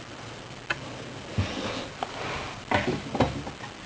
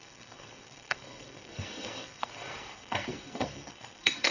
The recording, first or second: first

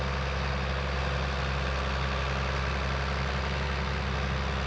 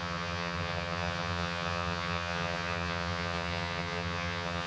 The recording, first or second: first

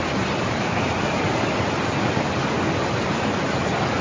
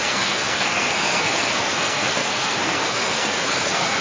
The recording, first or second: first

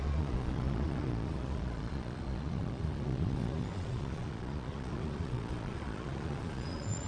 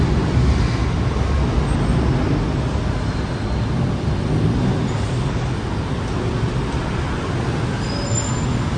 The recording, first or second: second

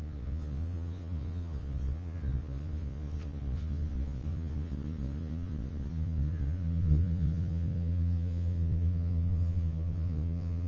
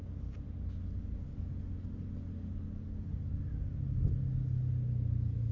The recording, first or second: second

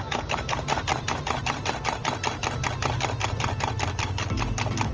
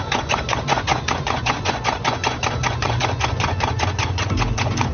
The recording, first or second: first